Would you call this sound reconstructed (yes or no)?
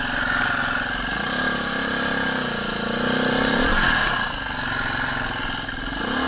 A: no